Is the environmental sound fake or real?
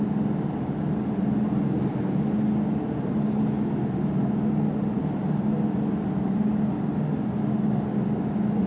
real